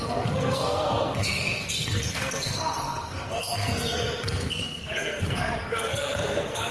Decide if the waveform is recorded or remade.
remade